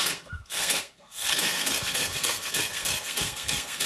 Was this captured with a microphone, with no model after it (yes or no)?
no